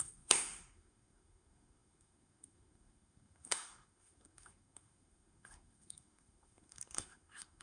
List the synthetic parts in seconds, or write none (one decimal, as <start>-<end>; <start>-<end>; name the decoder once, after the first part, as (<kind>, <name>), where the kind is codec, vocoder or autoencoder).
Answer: 0.0-7.6 (codec, SNAC)